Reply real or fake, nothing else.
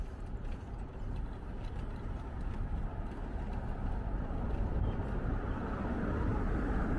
fake